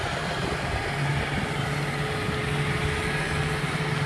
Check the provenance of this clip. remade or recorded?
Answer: recorded